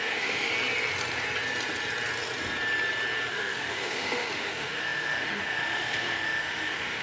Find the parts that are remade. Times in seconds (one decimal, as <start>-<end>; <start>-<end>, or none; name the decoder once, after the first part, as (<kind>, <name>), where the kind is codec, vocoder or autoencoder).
0.0-0.5 (autoencoder, DAC-VAE); 3.3-7.0